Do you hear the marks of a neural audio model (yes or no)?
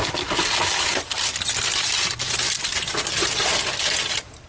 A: no